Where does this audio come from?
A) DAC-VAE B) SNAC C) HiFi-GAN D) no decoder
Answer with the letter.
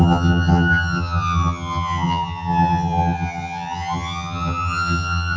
C